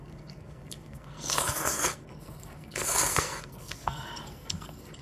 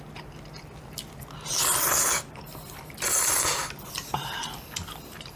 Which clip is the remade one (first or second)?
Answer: first